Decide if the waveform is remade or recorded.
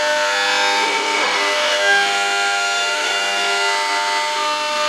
remade